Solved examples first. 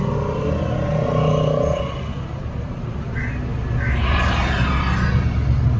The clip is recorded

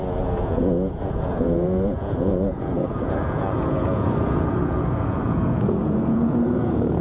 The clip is remade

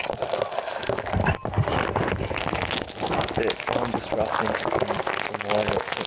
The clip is recorded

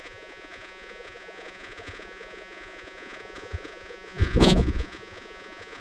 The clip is remade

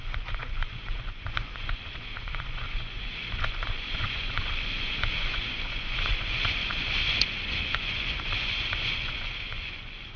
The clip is remade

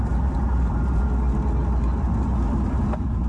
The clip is recorded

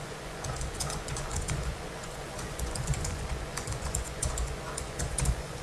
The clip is remade